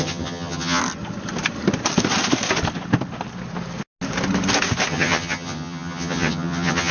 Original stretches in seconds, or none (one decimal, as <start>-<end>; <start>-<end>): 0.8-4.9